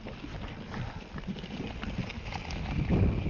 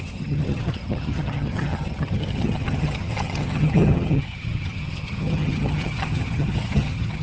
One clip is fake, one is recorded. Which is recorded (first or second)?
first